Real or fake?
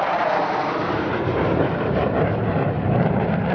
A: fake